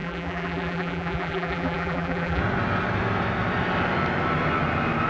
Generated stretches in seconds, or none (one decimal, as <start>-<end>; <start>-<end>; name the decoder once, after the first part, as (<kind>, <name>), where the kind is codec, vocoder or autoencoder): 0.0-2.4 (vocoder, BigVGAN v2)